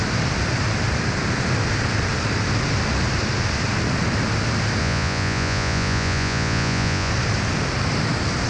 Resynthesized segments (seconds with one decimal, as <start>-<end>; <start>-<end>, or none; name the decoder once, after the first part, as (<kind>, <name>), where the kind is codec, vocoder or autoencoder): 4.8-7.1 (vocoder, Vocos)